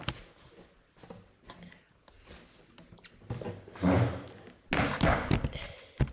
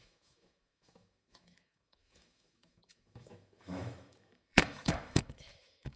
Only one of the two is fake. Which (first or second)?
second